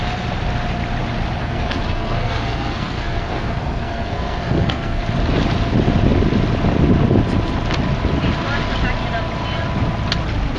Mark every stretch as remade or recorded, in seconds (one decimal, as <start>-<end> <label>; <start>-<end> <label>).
0.0-1.4 recorded; 1.4-5.0 remade; 5.0-10.6 recorded